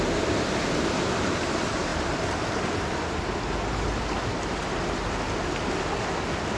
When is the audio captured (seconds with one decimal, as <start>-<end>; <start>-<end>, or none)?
0.0-6.6